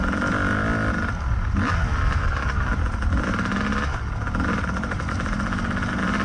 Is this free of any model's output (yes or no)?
yes